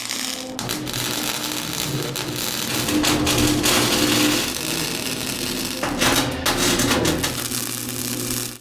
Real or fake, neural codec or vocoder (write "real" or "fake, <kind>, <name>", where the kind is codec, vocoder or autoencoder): real